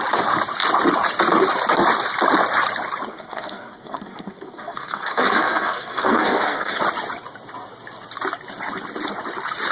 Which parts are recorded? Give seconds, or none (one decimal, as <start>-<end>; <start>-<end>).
0.0-3.1; 6.8-9.7